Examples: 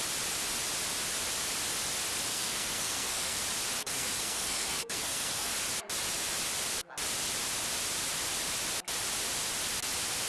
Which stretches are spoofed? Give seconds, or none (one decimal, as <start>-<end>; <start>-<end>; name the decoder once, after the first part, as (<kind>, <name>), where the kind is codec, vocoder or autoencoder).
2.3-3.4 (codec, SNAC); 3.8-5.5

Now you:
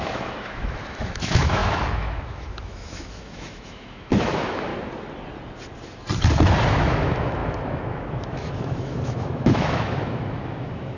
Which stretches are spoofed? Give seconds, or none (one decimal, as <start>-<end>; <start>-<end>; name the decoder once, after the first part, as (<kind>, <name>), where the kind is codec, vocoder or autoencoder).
0.0-4.7 (autoencoder, DAC-VAE); 6.7-11.0

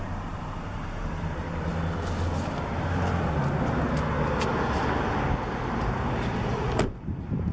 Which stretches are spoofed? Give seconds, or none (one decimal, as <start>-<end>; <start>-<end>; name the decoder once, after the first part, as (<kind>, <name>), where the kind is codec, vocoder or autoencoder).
0.0-1.7 (vocoder, BigVGAN v2); 5.7-7.5

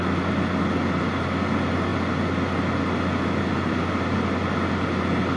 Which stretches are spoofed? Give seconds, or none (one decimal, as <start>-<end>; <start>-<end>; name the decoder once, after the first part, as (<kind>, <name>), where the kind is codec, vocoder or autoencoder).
none

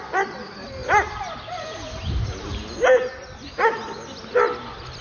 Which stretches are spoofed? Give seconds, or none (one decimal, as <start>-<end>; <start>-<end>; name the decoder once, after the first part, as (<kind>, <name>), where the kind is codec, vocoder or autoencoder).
0.8-2.6 (vocoder, BigVGAN v2)